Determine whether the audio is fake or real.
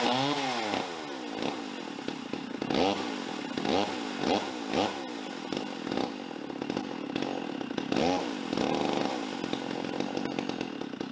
real